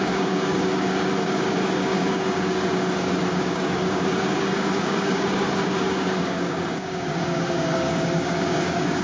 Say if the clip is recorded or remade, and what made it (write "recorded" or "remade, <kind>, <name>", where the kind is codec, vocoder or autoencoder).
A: remade, codec, DAC